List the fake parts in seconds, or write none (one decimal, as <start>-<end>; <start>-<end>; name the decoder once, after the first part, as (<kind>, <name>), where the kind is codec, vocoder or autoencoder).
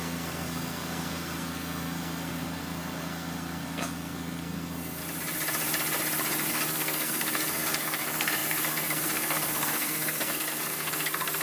0.0-5.0 (codec, SNAC); 6.5-11.4